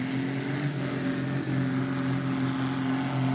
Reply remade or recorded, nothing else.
recorded